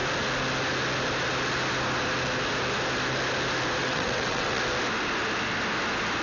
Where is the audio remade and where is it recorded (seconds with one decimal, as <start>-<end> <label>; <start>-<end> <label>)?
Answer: 0.0-3.8 recorded; 3.8-4.6 remade; 4.6-6.2 recorded